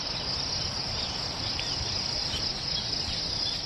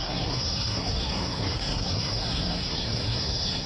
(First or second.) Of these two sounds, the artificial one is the second